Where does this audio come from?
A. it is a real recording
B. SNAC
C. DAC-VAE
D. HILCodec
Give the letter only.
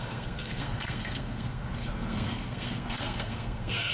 B